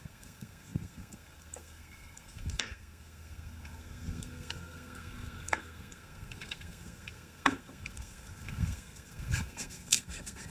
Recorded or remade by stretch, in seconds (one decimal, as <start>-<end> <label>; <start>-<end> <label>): 0.0-10.5 remade